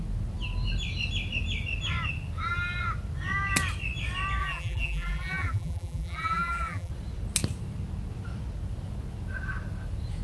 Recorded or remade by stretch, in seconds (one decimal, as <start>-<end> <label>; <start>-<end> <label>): 0.0-4.4 recorded; 4.4-6.9 remade; 6.9-10.2 recorded